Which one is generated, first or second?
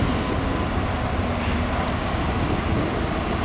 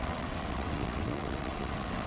second